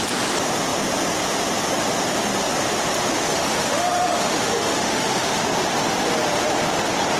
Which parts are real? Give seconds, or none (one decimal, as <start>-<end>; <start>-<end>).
0.0-3.3; 5.4-7.2